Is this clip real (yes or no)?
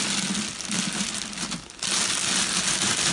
yes